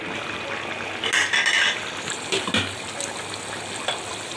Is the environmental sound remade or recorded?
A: recorded